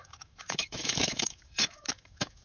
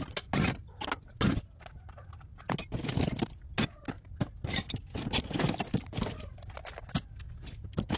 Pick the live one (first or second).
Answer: second